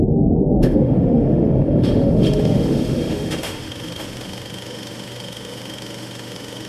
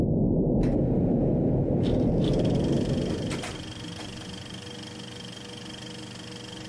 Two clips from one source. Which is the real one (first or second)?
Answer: second